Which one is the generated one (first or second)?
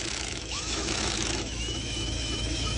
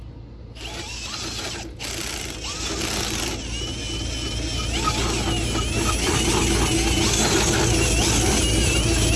first